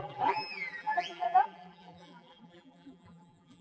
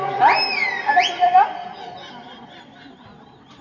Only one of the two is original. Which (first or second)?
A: second